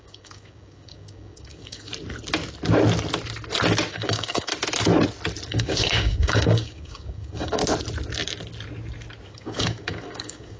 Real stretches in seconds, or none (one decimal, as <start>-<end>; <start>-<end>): 1.9-3.9; 4.5-5.5; 7.6-9.3